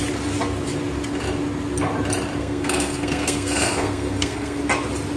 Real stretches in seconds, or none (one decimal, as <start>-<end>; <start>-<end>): 0.0-2.4; 4.6-5.2